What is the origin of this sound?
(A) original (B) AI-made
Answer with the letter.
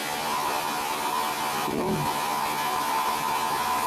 A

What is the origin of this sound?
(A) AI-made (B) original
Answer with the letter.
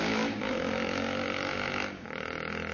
A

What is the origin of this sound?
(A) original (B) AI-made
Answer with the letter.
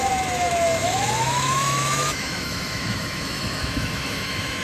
B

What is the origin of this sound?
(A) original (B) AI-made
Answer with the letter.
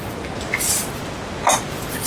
A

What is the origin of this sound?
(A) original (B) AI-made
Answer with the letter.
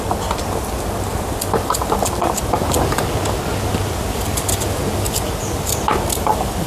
A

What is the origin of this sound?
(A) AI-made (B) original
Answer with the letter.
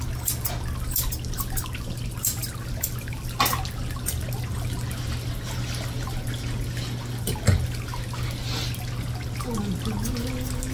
B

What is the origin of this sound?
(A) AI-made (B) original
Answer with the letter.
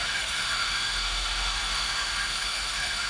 A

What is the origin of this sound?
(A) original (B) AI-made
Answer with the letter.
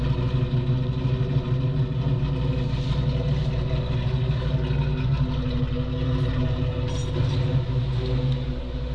A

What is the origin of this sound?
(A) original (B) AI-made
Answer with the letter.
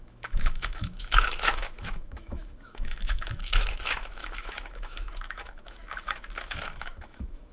B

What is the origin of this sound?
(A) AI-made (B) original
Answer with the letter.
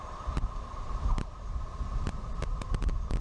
B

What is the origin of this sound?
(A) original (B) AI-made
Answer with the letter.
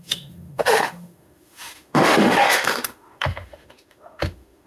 B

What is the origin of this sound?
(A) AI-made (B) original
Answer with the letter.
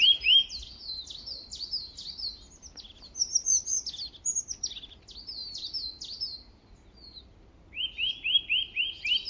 B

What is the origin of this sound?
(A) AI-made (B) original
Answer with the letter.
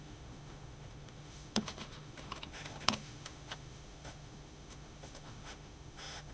A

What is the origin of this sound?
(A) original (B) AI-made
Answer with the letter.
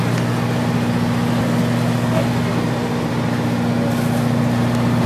A